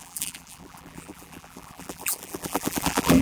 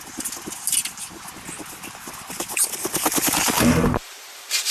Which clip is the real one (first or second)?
second